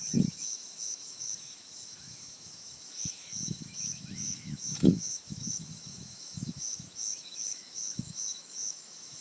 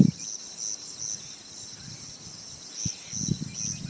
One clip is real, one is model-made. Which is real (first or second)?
second